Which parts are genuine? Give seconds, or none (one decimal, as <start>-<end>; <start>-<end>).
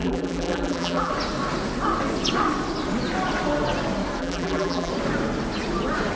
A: 1.1-4.2; 4.9-6.2